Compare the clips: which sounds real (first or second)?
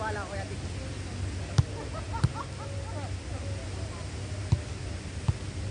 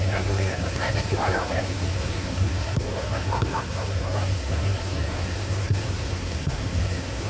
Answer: first